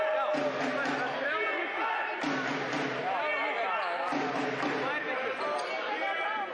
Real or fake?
real